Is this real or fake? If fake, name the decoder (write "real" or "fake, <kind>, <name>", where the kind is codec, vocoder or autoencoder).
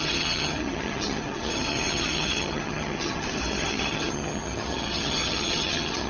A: fake, vocoder, HiFi-GAN